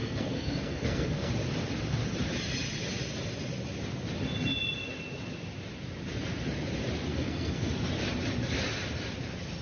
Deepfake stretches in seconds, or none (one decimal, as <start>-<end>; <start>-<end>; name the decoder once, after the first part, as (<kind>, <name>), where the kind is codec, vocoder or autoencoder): 0.0-1.3 (codec, SNAC); 7.1-7.7